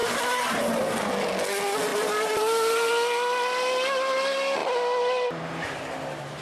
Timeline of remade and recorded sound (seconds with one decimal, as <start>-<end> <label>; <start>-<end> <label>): 0.0-1.1 remade; 1.1-1.9 recorded; 1.9-2.9 remade; 2.9-6.4 recorded